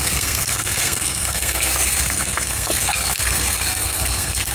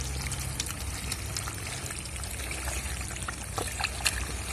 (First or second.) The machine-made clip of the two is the first